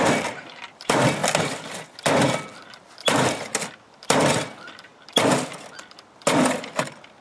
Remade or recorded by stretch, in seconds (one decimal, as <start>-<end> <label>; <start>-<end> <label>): 0.0-7.2 recorded